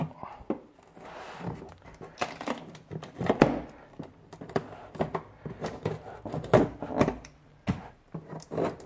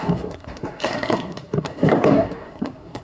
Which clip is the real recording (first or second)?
first